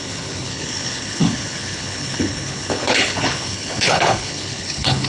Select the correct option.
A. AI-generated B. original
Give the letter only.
A